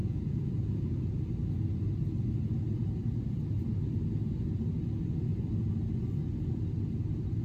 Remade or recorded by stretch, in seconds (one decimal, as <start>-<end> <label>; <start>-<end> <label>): 0.0-1.0 remade; 1.0-7.4 recorded